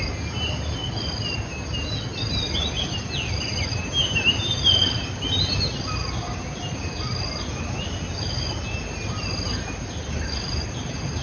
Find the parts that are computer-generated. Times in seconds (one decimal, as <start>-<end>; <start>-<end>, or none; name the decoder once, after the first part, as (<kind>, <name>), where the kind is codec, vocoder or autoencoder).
none